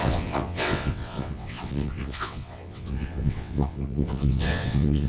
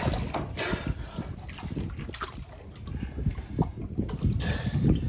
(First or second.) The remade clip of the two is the first